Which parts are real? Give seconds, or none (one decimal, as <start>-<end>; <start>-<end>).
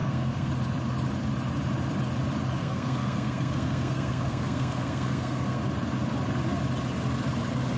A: 0.5-2.6; 5.6-7.8